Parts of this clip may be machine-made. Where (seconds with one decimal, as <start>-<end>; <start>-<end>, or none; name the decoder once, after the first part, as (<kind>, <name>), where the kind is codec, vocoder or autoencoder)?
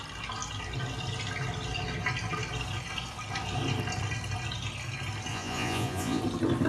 5.3-6.2 (vocoder, Vocos)